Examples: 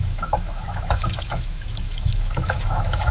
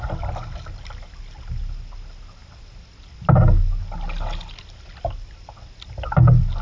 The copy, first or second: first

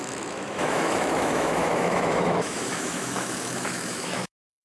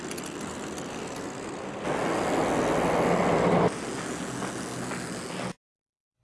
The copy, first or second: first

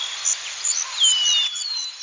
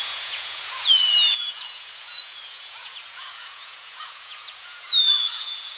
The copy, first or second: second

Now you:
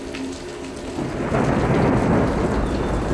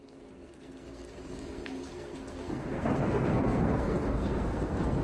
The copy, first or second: second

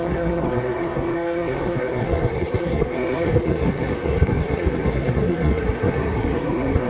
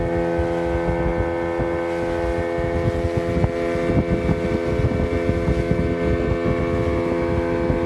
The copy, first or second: first